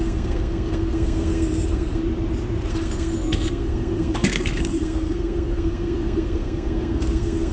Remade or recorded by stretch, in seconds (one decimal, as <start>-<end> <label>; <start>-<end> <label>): 0.0-2.0 remade; 2.0-2.7 recorded; 2.7-7.5 remade